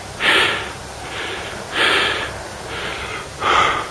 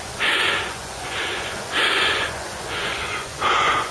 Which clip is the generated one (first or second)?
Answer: second